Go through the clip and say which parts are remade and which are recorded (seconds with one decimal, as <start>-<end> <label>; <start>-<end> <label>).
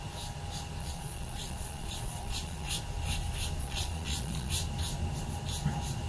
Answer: 0.0-0.8 recorded; 0.8-2.7 remade; 2.7-3.6 recorded; 3.6-4.5 remade; 4.5-6.1 recorded